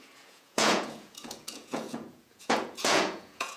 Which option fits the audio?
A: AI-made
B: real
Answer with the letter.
A